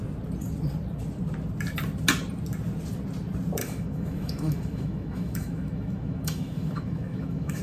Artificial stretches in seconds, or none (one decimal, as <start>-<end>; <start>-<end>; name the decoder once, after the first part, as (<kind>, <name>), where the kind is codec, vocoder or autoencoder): 3.6-7.6 (autoencoder, DAC-VAE)